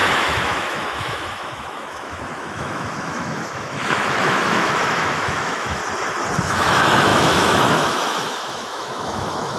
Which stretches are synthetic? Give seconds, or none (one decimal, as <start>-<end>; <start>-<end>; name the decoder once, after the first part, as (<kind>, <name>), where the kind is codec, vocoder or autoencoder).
0.0-5.8 (autoencoder, DAC-VAE); 6.4-9.6